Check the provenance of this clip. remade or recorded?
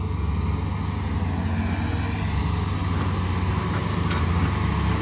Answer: recorded